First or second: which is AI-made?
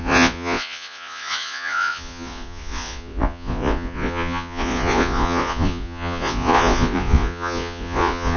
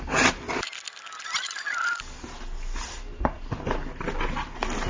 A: first